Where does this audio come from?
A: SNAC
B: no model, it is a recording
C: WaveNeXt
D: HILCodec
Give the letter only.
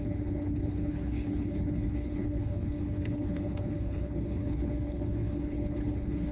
D